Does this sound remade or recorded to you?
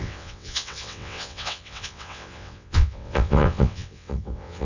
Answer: remade